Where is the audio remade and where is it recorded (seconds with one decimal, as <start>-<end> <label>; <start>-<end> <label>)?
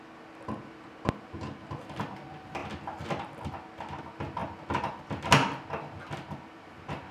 0.0-7.1 recorded